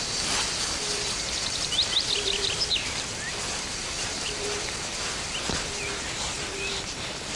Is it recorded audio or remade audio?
remade